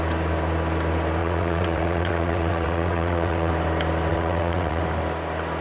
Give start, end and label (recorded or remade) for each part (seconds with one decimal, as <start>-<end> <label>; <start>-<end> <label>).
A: 0.0-1.2 recorded; 1.2-3.5 remade; 3.5-4.1 recorded; 4.1-4.8 remade; 4.8-5.6 recorded